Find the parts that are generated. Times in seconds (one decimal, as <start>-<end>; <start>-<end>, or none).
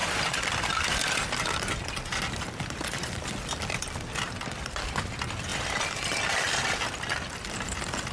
none